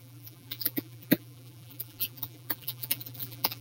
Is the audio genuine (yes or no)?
no